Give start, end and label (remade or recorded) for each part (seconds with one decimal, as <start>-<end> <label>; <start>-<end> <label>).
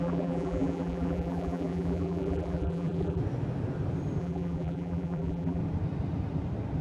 0.0-3.2 remade; 3.2-4.2 recorded; 4.2-5.6 remade; 5.6-6.8 recorded